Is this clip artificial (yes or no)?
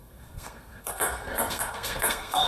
yes